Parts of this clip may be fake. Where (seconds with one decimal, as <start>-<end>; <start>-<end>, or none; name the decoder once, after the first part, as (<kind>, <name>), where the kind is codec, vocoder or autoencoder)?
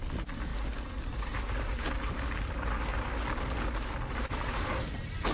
none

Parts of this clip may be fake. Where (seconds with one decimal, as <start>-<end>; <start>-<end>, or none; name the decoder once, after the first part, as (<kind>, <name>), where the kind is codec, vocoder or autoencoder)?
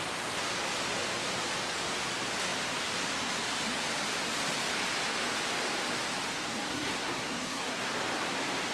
6.7-7.8 (codec, SNAC)